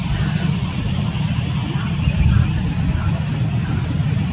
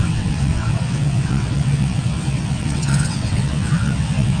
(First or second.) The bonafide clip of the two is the first